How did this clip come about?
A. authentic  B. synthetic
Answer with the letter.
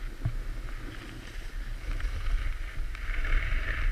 A